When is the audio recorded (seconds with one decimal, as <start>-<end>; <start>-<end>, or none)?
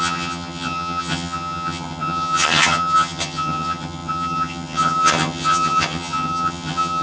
none